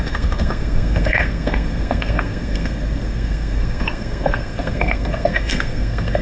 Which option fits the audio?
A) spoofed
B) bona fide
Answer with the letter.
A